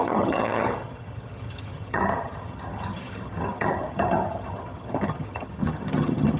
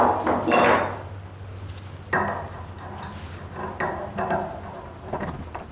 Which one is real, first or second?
second